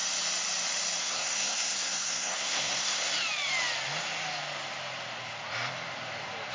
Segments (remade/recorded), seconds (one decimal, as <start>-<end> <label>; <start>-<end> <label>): 0.0-1.0 recorded; 1.0-3.0 remade; 3.0-6.5 recorded